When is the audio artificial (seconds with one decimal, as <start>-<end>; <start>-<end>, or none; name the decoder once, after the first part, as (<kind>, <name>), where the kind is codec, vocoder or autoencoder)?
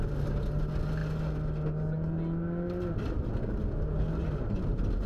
none